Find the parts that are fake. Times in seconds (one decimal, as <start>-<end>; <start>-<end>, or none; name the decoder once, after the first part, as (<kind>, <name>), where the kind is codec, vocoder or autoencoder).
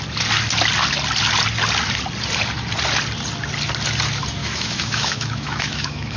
4.4-6.2 (autoencoder, DAC-VAE)